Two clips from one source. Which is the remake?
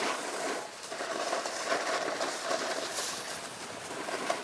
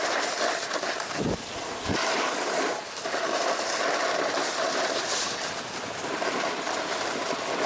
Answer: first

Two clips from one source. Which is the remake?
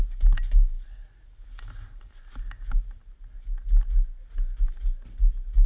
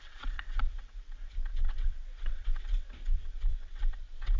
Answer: second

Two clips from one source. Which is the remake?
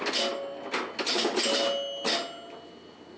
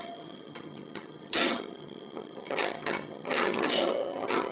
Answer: second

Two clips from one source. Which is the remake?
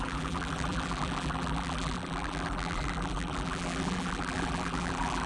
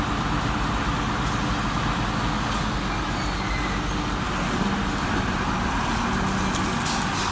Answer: first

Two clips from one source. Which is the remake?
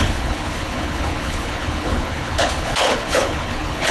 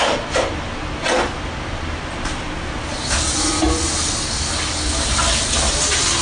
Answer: first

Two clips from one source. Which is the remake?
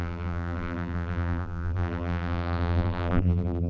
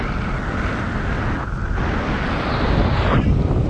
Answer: first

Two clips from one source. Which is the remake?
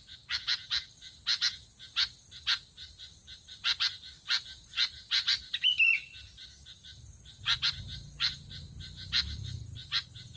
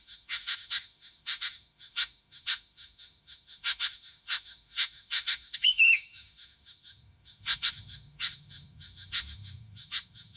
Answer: second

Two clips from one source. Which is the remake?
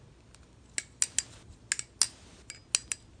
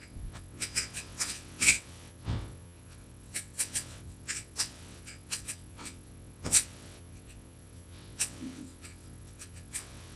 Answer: second